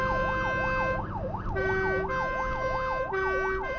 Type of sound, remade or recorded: recorded